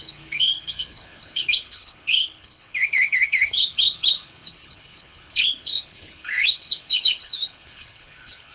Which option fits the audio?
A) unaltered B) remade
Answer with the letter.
B